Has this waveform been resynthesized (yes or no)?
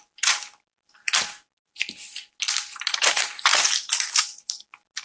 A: no